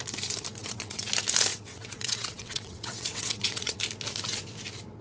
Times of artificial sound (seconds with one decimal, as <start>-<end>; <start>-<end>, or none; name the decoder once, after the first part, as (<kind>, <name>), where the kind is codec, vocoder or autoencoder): 0.6-1.1 (vocoder, WaveNeXt); 1.5-3.8